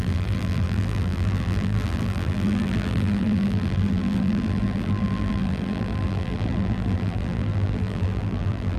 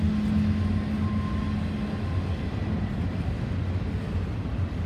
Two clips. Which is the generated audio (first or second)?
first